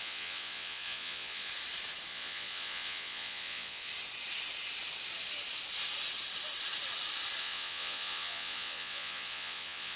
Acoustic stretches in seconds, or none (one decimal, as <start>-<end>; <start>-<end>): 1.5-2.1; 3.9-7.4